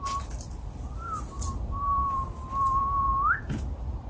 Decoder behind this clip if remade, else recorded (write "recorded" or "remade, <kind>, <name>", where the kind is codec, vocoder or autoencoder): remade, vocoder, BigVGAN v2